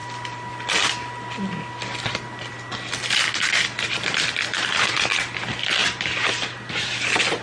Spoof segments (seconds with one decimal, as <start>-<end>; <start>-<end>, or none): 5.8-6.7